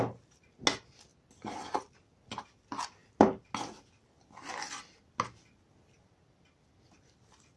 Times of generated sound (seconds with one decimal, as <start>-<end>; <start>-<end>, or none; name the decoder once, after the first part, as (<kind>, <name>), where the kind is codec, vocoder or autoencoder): none